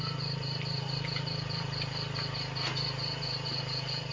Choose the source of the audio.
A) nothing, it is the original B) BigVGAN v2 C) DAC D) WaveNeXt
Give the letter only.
A